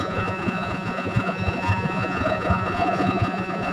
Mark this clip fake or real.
fake